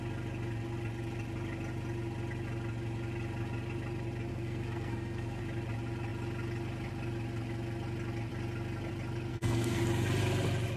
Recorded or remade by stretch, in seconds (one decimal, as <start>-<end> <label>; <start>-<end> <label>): 0.0-4.3 recorded; 4.3-5.4 remade; 5.4-9.3 recorded; 9.3-9.8 remade; 9.8-10.8 recorded